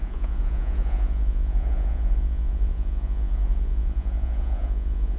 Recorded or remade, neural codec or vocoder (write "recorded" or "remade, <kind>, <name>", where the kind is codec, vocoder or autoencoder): remade, vocoder, Vocos